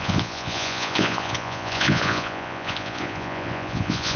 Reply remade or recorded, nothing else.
remade